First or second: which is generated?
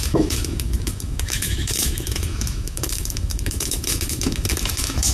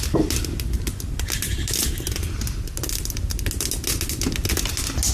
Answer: first